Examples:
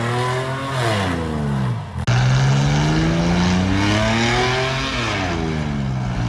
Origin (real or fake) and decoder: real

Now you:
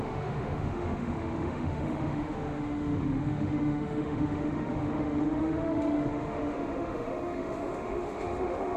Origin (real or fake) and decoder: fake, autoencoder, DAC-VAE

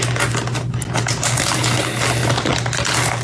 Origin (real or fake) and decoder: real